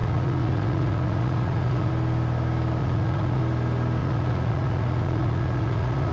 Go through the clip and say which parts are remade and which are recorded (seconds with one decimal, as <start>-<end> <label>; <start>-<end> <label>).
0.0-1.9 remade; 1.9-2.8 recorded; 2.8-3.4 remade; 3.4-4.0 recorded; 4.0-6.1 remade